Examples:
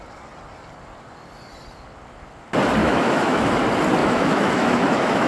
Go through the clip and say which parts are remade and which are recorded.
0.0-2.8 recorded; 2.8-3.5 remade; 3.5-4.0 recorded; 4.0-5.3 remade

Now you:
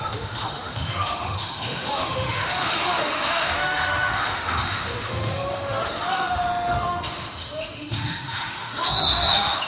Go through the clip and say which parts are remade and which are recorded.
0.0-9.7 remade

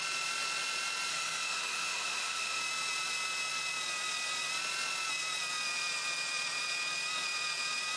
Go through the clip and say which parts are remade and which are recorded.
0.0-1.1 recorded; 1.1-2.6 remade; 2.6-8.0 recorded

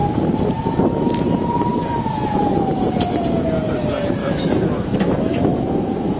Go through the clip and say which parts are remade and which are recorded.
0.0-4.2 recorded; 4.2-6.2 remade